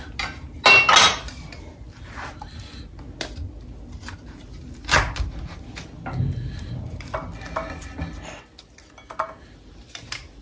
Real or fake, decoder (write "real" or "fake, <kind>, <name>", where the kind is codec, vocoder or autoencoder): real